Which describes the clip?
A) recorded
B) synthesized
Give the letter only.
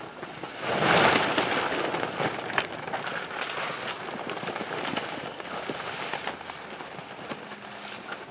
A